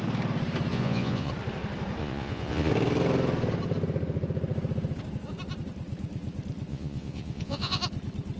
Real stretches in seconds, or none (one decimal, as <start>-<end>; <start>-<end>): 0.0-0.7; 1.3-2.0; 2.7-6.7; 7.8-8.4